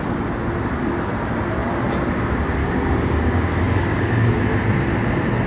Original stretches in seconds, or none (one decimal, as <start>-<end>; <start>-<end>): 0.0-2.6; 4.4-5.5